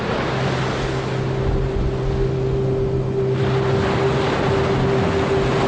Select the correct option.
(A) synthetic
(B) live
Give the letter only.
B